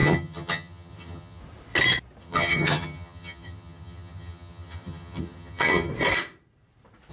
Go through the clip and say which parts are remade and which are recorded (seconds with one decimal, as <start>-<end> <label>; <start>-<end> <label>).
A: 0.0-1.4 remade; 1.4-2.2 recorded; 2.2-5.9 remade; 5.9-7.1 recorded